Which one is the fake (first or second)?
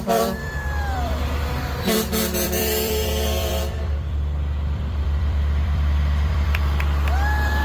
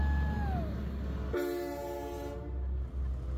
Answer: first